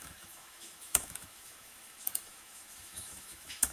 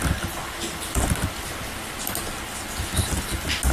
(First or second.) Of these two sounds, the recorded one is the second